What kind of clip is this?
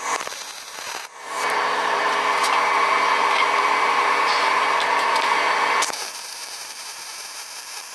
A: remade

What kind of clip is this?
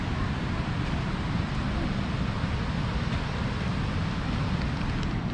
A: recorded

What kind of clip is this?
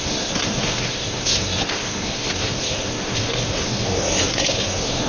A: remade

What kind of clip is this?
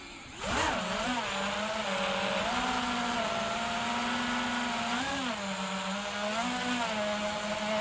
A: recorded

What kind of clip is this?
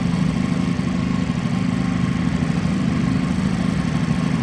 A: recorded